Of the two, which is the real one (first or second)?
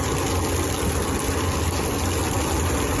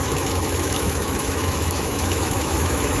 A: first